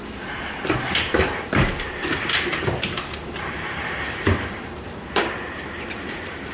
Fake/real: fake